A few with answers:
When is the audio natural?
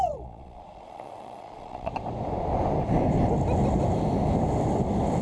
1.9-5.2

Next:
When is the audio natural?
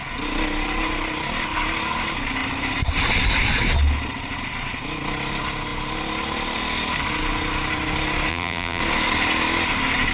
0.0-8.3; 8.8-10.1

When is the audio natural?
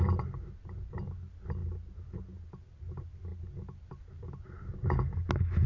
0.0-5.7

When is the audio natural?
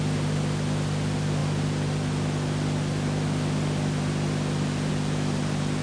0.0-5.8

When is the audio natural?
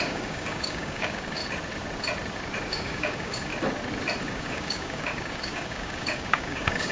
1.4-2.7; 3.5-4.2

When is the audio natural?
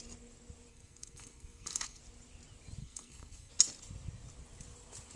0.0-0.7; 2.0-2.8; 3.5-5.2